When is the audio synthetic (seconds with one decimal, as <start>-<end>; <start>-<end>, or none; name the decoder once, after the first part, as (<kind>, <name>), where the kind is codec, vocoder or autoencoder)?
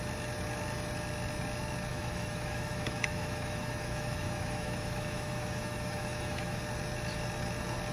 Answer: 1.9-6.6 (autoencoder, DAC-VAE)